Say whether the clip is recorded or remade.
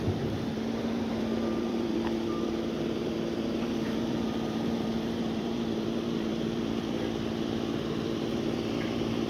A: remade